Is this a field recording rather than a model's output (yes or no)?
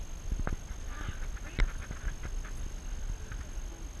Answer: yes